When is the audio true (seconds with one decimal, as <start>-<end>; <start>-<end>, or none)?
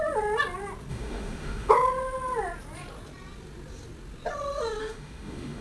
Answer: 0.0-0.9; 1.7-4.8